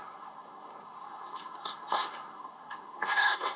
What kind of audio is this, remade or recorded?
remade